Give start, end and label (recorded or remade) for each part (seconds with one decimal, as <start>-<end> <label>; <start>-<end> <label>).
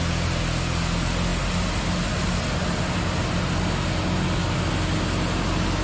0.0-5.8 recorded